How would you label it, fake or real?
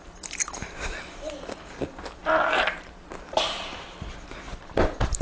fake